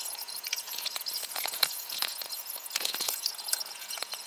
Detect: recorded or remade remade